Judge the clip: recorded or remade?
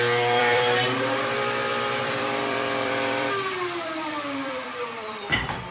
remade